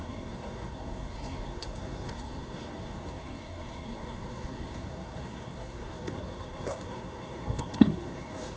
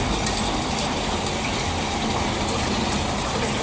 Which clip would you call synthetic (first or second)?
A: first